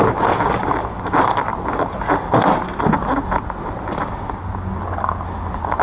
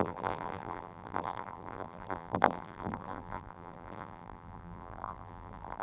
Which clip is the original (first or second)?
first